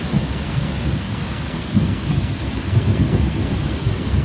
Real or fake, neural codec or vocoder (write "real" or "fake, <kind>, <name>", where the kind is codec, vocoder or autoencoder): fake, codec, SNAC